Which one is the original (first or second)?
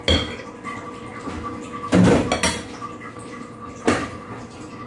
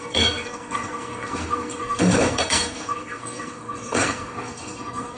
first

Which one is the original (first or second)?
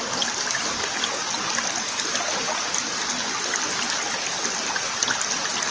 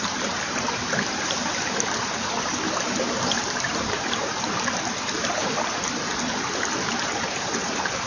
first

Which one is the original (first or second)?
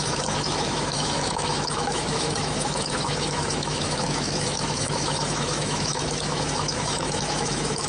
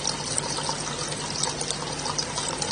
second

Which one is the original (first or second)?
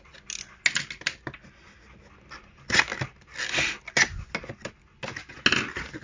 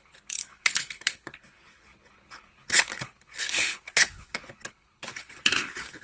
first